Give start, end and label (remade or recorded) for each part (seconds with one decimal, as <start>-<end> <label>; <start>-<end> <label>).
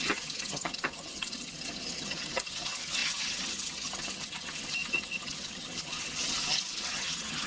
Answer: 0.0-7.5 remade